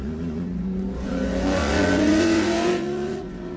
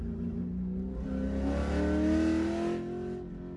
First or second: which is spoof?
first